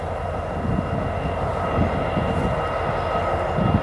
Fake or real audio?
real